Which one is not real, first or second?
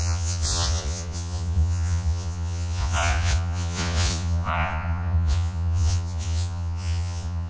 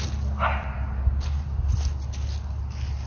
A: first